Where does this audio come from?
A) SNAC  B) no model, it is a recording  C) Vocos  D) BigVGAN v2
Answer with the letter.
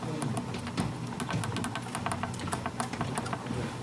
B